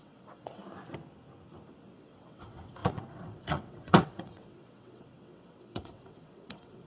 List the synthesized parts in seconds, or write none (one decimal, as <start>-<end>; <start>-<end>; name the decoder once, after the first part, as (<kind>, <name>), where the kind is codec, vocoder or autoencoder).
0.0-0.6 (vocoder, WaveNeXt); 1.9-6.9